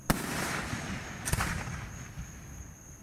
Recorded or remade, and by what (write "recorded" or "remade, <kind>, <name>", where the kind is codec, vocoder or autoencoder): recorded